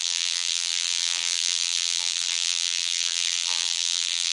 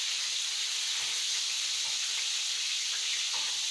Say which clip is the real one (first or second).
second